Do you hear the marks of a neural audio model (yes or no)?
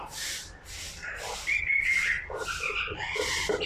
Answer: no